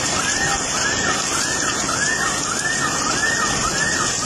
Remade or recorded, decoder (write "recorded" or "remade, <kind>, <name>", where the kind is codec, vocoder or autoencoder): recorded